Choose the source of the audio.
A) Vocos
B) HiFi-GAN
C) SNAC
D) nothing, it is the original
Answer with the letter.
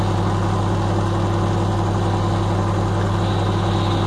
D